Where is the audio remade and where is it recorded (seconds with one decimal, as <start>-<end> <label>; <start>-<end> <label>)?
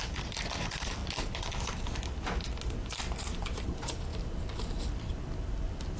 0.0-1.0 remade; 1.0-3.2 recorded; 3.2-4.1 remade; 4.1-4.8 recorded; 4.8-6.0 remade